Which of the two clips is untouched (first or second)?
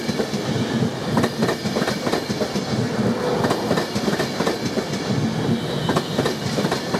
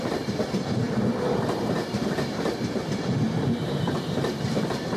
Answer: first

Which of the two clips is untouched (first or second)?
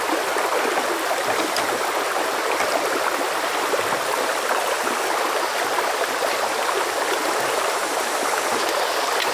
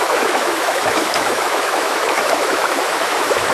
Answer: first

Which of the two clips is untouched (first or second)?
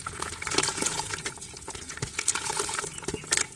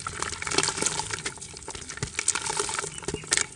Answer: second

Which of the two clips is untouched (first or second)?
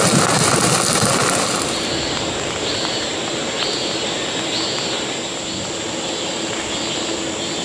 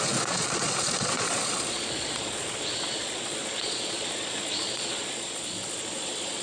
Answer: first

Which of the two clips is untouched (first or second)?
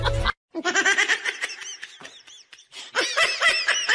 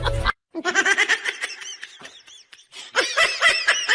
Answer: first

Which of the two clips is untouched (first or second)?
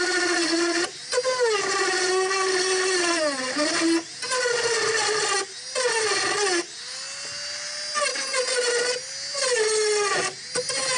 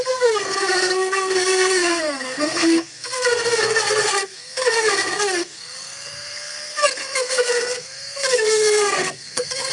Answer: first